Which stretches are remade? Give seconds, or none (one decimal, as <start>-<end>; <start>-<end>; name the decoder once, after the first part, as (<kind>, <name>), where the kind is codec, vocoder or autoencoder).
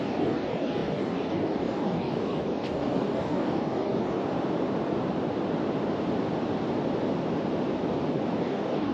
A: 0.0-4.2 (codec, DAC); 8.4-8.9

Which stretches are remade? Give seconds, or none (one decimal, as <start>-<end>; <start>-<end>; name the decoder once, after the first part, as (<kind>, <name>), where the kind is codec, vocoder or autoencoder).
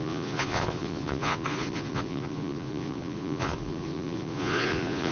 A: 0.0-5.1 (vocoder, Vocos)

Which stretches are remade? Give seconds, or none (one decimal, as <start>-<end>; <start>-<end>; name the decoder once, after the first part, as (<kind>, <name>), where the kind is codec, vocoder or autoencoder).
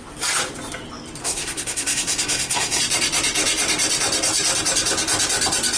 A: 1.2-2.8 (codec, SNAC)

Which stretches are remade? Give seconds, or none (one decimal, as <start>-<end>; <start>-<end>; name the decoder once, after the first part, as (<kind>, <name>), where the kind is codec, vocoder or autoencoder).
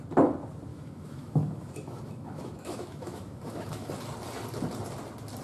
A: 0.7-3.9 (autoencoder, DAC-VAE)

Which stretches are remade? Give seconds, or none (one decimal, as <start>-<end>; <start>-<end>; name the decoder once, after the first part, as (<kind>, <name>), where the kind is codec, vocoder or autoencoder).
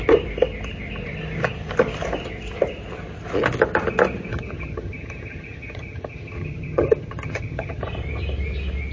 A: 4.3-7.8 (vocoder, HiFi-GAN)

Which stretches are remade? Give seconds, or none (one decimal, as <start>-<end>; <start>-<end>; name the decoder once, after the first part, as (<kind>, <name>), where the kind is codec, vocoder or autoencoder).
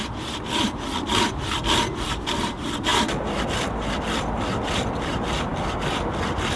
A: none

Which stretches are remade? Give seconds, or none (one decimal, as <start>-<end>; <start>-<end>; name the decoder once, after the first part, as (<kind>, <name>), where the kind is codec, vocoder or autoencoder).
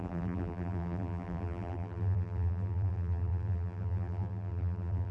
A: 0.0-5.1 (vocoder, BigVGAN v2)